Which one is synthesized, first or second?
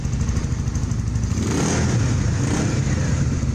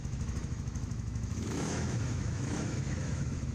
second